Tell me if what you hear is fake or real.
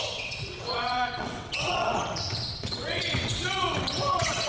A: fake